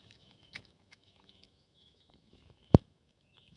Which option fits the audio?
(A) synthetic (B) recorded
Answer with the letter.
A